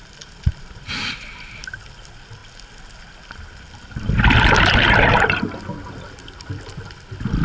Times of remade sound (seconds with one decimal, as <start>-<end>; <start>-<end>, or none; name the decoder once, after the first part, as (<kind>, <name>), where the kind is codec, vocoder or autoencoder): none

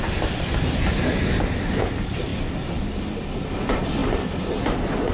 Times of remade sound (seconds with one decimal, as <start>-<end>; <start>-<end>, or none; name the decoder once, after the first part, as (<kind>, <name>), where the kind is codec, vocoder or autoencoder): none

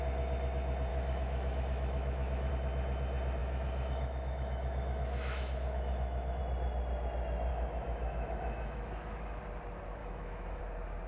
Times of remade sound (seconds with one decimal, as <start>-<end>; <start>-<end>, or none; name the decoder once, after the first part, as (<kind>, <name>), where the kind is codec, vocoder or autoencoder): 0.9-2.5 (autoencoder, DAC-VAE); 3.4-6.4; 7.5-9.4; 10.0-10.6